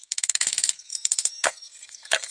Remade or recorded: remade